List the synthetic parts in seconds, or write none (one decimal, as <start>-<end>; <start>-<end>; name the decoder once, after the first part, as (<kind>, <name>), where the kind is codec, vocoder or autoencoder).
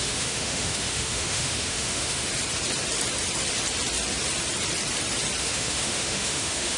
0.0-2.3 (autoencoder, DAC-VAE); 5.4-6.8